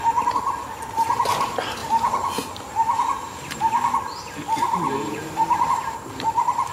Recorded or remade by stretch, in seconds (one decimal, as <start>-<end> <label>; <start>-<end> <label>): 0.0-4.7 recorded; 4.7-5.7 remade; 5.7-6.7 recorded